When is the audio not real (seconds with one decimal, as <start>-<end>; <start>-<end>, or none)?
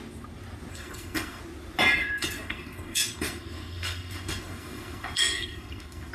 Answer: 0.7-1.4; 2.0-6.1